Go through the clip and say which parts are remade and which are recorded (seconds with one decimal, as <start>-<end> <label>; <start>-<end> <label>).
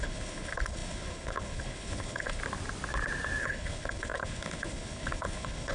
0.0-2.4 remade; 2.4-3.4 recorded; 3.4-5.7 remade